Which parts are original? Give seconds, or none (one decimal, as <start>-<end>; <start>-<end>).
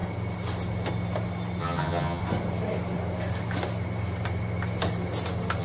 0.0-1.6; 2.2-5.6